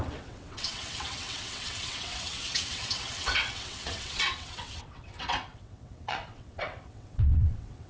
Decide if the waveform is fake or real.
fake